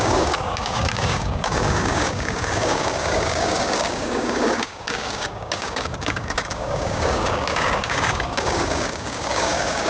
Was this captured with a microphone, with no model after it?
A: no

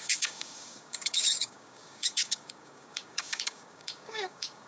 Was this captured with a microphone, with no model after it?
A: no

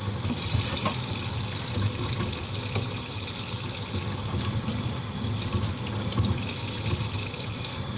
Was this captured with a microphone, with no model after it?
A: yes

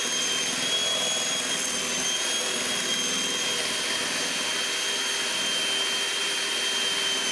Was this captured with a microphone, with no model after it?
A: yes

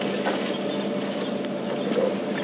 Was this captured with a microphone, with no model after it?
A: yes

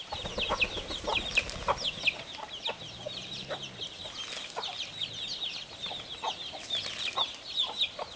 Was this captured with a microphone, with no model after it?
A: yes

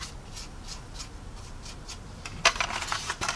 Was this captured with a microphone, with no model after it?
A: yes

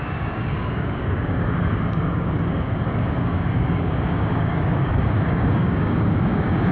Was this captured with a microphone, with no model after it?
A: no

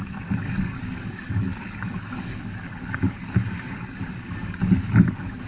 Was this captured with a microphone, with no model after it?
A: no